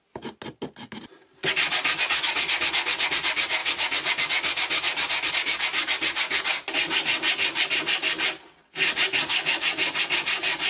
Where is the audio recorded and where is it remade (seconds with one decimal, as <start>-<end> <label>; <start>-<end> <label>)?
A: 0.0-10.7 recorded